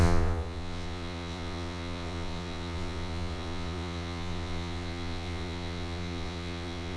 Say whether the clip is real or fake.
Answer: fake